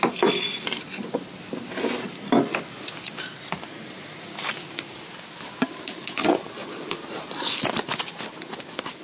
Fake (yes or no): no